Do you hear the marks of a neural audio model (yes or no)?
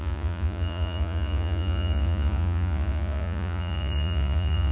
yes